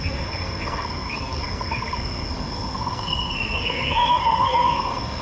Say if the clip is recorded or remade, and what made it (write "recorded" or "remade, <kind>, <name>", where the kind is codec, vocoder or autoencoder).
remade, codec, SNAC